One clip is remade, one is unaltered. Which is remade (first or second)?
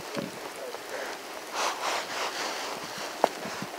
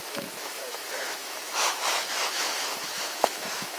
second